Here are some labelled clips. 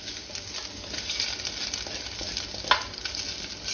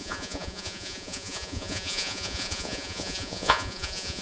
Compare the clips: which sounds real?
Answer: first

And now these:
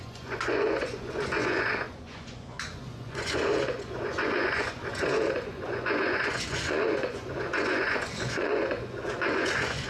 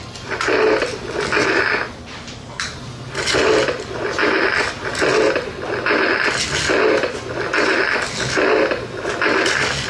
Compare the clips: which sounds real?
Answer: second